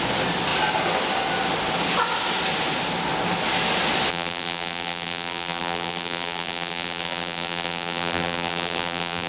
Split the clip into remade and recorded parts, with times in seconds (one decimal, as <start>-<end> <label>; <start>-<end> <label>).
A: 0.0-4.1 recorded; 4.1-9.3 remade

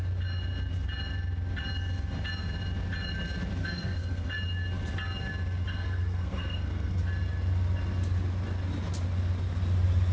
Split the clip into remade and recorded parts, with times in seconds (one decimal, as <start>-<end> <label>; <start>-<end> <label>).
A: 0.0-3.6 recorded; 3.6-4.3 remade; 4.3-5.7 recorded; 5.7-7.0 remade; 7.0-10.1 recorded

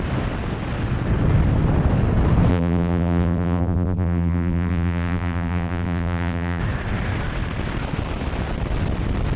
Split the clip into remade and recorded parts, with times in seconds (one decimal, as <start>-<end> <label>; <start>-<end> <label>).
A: 0.0-2.5 recorded; 2.5-6.6 remade; 6.6-9.4 recorded